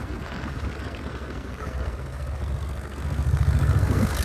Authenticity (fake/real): fake